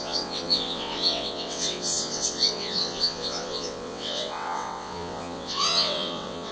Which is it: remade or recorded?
remade